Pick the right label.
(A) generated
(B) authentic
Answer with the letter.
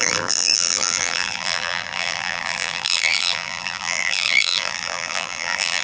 A